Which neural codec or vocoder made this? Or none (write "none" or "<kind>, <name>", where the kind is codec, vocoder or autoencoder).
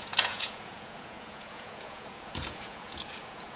vocoder, Vocos